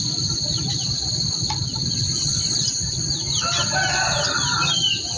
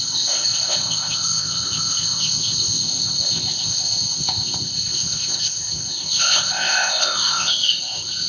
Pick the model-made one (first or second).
second